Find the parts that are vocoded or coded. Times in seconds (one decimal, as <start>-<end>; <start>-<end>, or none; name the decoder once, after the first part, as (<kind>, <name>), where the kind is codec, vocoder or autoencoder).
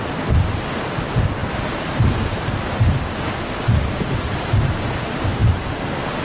none